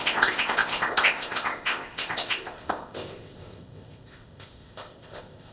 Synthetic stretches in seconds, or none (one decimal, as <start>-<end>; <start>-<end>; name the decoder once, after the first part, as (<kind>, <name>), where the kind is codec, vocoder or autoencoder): 0.0-5.5 (codec, ZipCodec)